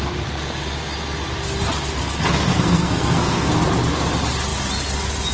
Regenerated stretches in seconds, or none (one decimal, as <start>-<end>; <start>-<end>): 2.5-3.5